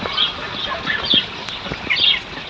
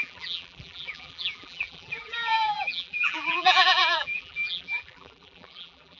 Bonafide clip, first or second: first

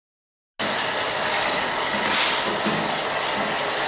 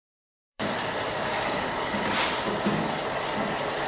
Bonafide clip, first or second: first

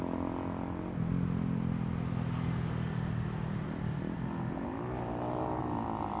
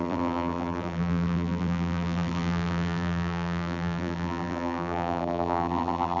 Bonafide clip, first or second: first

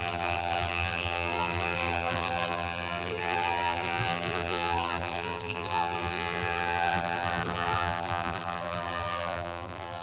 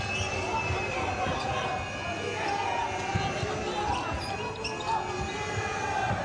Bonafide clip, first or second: second